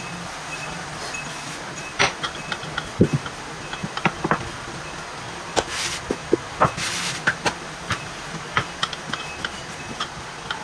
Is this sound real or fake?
real